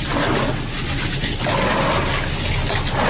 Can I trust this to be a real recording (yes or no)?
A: yes